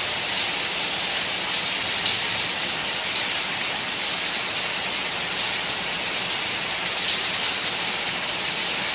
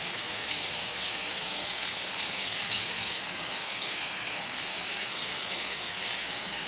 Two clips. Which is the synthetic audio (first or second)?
second